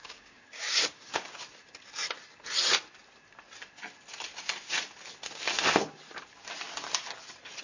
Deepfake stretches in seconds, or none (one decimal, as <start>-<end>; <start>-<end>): 0.0-1.4